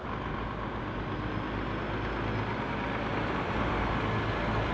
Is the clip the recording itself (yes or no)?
yes